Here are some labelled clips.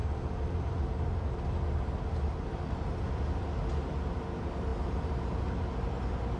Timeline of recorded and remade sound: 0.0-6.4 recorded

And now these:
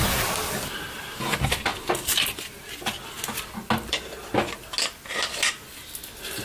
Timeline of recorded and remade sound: 0.0-6.4 recorded

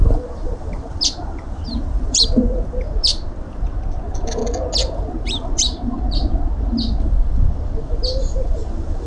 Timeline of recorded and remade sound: 0.0-4.4 remade; 4.4-5.1 recorded; 5.1-9.1 remade

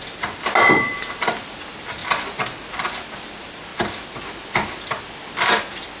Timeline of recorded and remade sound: 0.0-0.6 recorded; 0.6-2.0 remade; 2.0-2.7 recorded; 2.7-3.7 remade; 3.7-4.4 recorded; 4.4-6.0 remade